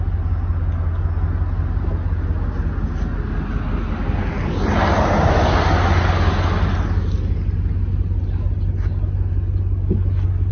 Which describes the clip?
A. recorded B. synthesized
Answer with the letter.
A